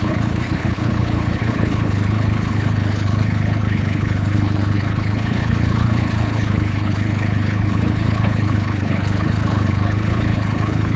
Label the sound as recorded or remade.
remade